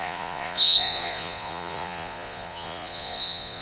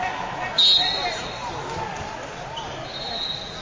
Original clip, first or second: second